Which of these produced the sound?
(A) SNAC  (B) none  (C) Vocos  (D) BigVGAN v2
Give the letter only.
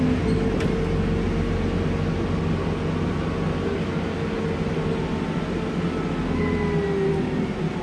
B